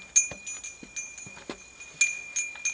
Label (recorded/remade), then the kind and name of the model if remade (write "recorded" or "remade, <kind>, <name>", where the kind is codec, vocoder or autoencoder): recorded